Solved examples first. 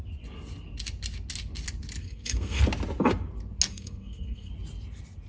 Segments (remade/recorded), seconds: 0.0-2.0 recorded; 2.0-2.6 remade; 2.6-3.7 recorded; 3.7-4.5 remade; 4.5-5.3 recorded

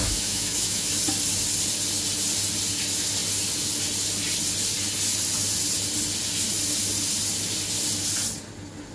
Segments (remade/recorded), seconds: 0.0-0.9 remade; 0.9-8.9 recorded

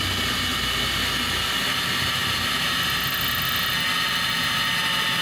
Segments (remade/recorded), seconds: 0.0-5.2 recorded

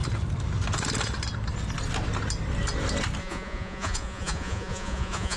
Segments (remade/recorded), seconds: 0.0-3.2 recorded; 3.2-5.4 remade

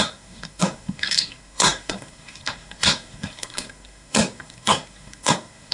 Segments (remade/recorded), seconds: 0.0-5.7 remade

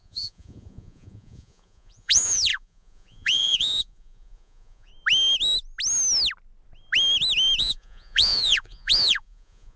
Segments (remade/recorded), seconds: 0.0-4.9 remade; 4.9-7.6 recorded; 7.6-9.8 remade